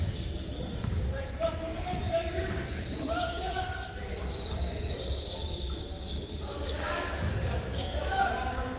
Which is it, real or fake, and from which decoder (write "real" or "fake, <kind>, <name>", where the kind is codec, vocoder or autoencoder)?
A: fake, codec, DAC